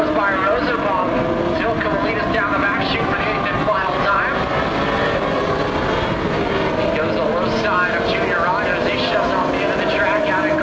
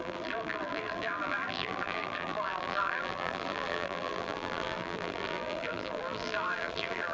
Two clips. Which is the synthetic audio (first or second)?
second